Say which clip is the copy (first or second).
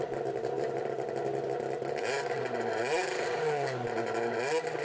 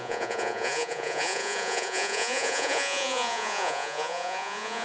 second